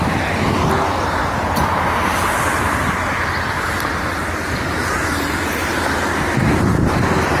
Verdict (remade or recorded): recorded